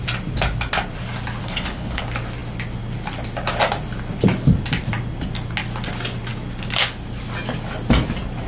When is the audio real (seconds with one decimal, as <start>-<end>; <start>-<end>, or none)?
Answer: 0.0-1.4; 2.0-8.5